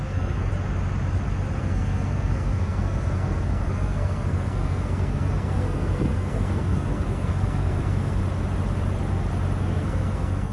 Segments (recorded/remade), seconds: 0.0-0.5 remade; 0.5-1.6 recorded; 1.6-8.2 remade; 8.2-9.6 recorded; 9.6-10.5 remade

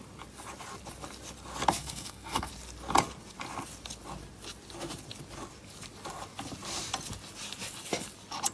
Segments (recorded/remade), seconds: 0.0-1.8 recorded; 1.8-2.5 remade; 2.5-8.5 recorded

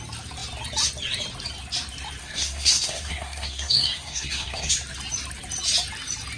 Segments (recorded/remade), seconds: 0.0-2.2 recorded; 2.2-4.7 remade; 4.7-6.4 recorded

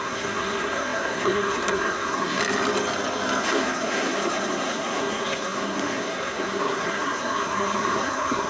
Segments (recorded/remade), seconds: 0.0-2.4 remade; 2.4-3.4 recorded; 3.4-8.5 remade

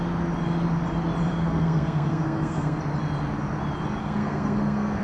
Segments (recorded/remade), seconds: 0.0-1.3 recorded; 1.3-2.8 remade; 2.8-4.0 recorded; 4.0-5.0 remade

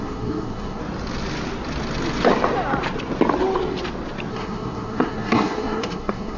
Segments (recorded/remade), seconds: 0.0-0.8 remade; 0.8-4.3 recorded; 4.3-6.4 remade

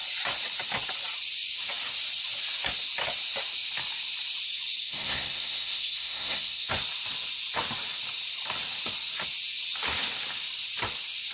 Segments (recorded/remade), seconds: 0.0-4.8 recorded; 4.8-6.7 remade; 6.7-11.3 recorded